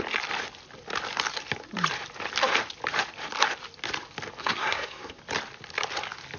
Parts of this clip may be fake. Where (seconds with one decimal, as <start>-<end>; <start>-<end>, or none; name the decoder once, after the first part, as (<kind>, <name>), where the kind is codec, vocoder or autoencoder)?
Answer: 4.4-5.2 (codec, SNAC)